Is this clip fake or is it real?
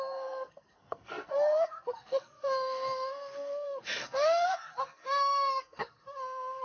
fake